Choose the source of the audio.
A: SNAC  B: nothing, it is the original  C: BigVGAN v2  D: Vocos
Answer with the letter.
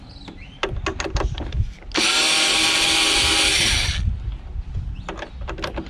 B